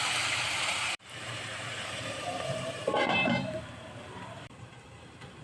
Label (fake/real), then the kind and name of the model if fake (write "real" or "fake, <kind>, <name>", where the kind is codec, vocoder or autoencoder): fake, vocoder, BigVGAN v2